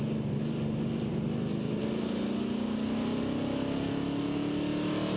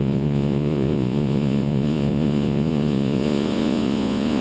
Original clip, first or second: first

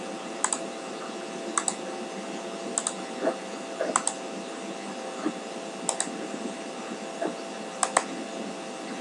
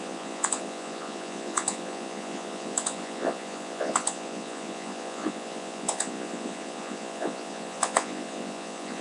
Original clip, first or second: first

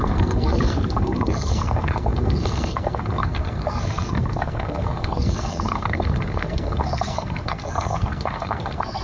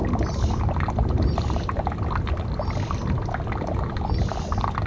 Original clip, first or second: second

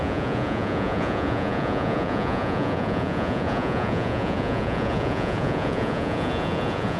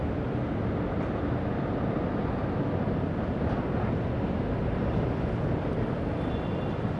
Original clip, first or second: second